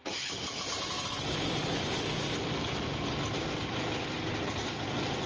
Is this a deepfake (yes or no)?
no